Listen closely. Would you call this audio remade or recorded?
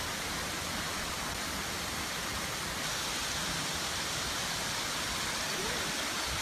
recorded